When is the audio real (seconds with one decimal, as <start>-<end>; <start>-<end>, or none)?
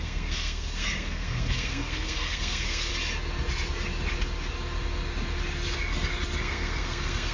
2.9-6.4